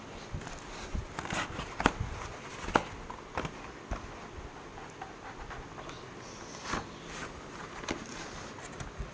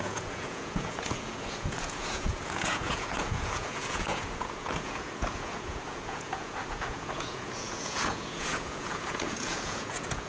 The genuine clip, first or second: first